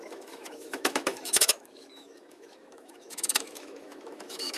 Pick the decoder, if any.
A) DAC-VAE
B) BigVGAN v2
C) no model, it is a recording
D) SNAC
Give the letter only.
A